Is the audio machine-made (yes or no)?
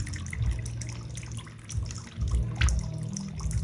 no